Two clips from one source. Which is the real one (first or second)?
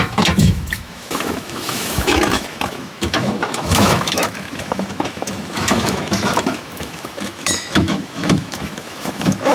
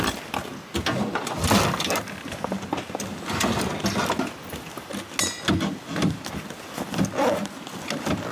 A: second